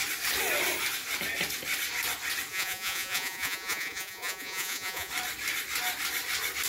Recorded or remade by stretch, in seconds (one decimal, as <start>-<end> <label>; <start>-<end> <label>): 0.0-2.5 recorded; 2.5-5.1 remade; 5.1-6.7 recorded